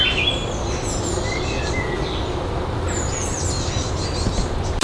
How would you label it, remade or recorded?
recorded